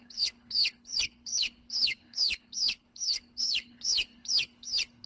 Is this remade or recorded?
remade